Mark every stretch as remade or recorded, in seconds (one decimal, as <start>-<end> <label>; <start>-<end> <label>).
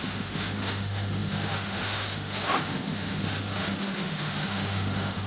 0.0-5.3 remade